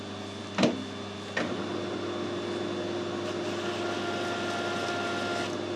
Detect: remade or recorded recorded